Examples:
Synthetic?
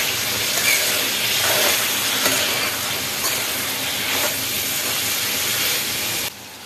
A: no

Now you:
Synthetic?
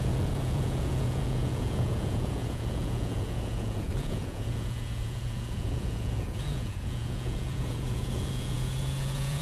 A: yes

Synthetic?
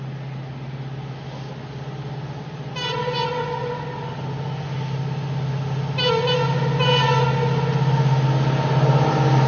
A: no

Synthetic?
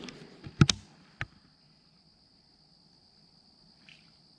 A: no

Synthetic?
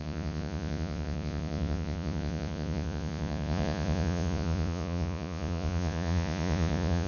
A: yes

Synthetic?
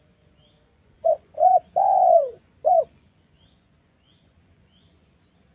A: yes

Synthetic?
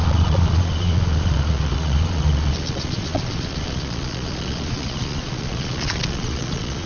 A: yes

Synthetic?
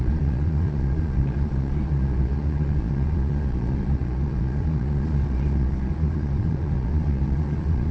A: yes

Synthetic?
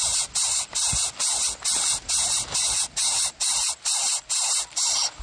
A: no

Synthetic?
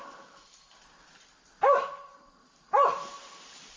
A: no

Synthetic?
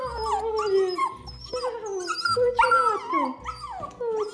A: no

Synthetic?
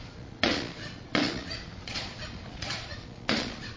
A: yes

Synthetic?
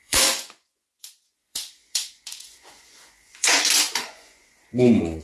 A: yes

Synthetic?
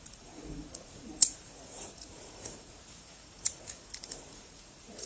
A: yes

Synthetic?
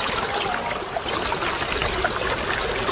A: no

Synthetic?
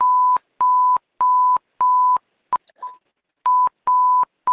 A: no